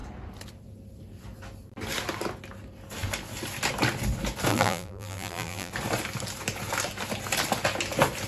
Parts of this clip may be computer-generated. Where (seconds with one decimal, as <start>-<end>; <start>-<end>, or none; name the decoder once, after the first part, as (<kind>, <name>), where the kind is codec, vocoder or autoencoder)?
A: 4.5-5.7 (vocoder, BigVGAN v2)